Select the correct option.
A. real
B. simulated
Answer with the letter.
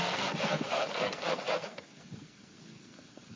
B